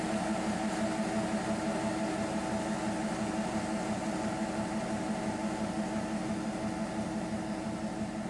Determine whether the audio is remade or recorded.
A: recorded